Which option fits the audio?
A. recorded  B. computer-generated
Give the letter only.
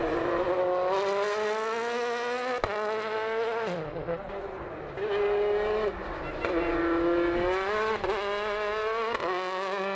A